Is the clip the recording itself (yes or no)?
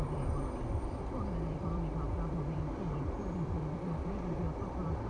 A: no